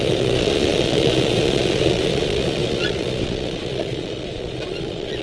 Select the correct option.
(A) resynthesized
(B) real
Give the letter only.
A